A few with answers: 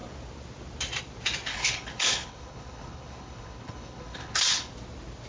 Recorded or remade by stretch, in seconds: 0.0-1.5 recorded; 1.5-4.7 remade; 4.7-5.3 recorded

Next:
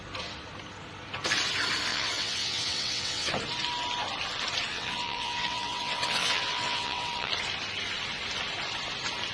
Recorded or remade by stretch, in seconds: 0.0-1.9 recorded; 1.9-3.3 remade; 3.3-4.7 recorded; 4.7-7.3 remade; 7.3-9.3 recorded

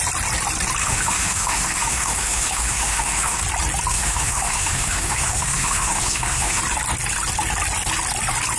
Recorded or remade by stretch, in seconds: 0.0-0.8 recorded; 0.8-3.4 remade; 3.4-3.9 recorded; 3.9-6.6 remade; 6.6-8.6 recorded

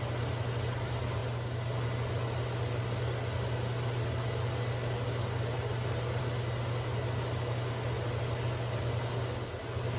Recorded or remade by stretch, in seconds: 0.0-10.0 recorded